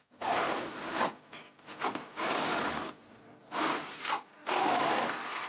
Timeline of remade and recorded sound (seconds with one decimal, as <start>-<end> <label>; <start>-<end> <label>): 0.0-5.5 recorded